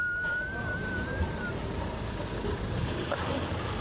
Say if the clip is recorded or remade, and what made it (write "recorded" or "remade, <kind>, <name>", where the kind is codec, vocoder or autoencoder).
remade, vocoder, BigVGAN v2